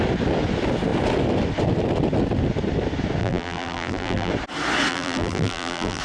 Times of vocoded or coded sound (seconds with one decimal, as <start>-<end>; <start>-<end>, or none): 3.2-4.3; 4.9-6.0